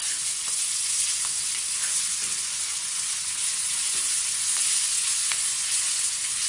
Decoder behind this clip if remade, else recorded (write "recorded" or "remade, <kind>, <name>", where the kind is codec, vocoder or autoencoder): remade, vocoder, Vocos